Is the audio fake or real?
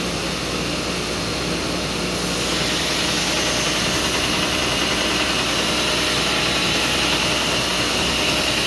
real